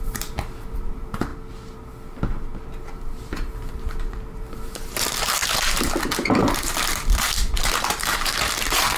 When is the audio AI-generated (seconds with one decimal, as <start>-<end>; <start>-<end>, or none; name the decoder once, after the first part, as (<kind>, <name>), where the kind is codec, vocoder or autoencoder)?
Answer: 0.0-1.3 (vocoder, BigVGAN v2); 3.5-5.4; 7.8-9.0